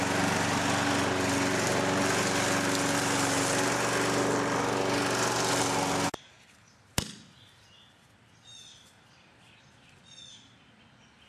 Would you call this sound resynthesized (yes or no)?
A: no